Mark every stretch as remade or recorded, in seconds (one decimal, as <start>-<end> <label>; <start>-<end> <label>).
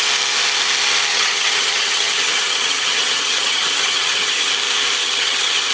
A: 0.0-1.1 recorded; 1.1-4.5 remade; 4.5-5.0 recorded; 5.0-5.7 remade